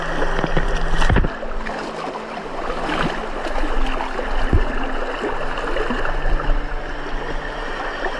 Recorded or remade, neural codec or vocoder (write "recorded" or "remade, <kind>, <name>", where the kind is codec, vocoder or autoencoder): recorded